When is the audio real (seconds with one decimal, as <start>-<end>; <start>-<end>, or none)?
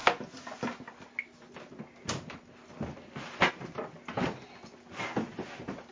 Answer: 0.0-5.9